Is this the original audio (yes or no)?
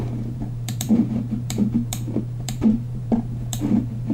no